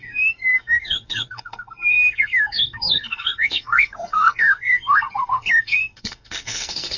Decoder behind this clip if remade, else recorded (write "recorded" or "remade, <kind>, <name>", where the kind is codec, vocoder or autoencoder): remade, codec, SNAC